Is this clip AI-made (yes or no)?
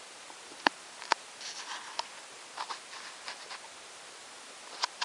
no